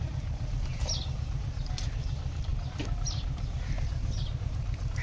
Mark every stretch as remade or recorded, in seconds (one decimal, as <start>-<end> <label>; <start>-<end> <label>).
0.0-5.0 recorded